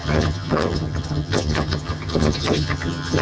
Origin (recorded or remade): remade